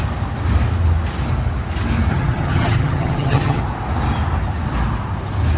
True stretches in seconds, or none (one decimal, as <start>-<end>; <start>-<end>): 0.0-2.1; 3.6-5.6